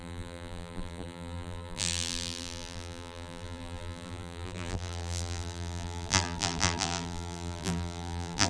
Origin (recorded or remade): remade